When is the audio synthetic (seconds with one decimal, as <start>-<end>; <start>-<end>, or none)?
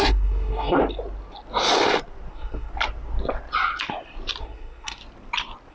0.0-0.8; 2.3-2.7; 4.4-5.0